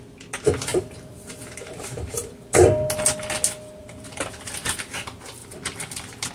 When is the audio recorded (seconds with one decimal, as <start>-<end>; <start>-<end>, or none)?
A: 0.0-0.7; 2.7-3.8; 4.5-5.4